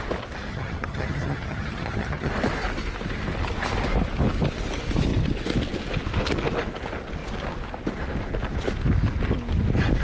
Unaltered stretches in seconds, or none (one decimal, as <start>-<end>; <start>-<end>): 0.0-0.5; 2.3-10.0